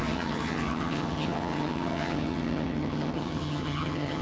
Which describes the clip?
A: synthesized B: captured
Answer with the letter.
A